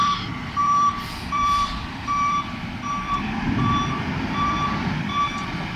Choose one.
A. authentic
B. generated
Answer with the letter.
B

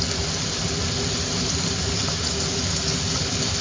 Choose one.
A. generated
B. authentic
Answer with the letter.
B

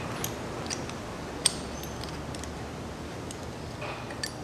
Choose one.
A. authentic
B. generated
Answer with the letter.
A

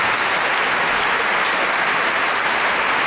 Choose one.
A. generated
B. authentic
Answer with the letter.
B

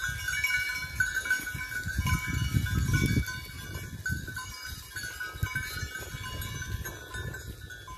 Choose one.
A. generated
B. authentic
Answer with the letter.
B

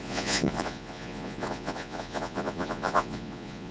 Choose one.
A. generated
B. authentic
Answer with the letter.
A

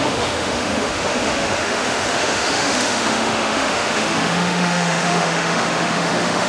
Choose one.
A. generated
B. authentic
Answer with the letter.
A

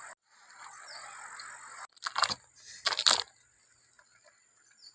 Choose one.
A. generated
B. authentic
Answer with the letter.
B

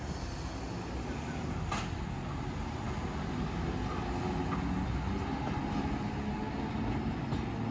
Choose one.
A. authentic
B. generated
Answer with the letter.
A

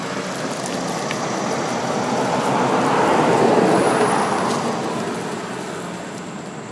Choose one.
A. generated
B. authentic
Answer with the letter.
B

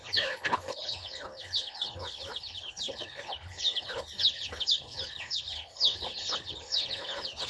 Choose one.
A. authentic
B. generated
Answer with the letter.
B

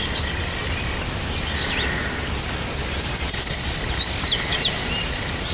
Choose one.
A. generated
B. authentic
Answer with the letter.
B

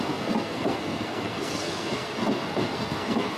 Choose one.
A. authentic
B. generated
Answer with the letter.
B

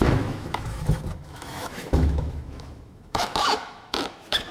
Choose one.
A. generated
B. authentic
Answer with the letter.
A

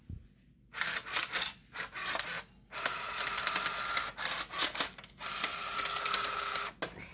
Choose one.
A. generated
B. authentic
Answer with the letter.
B